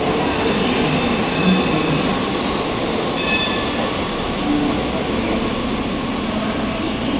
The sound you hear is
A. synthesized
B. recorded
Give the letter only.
B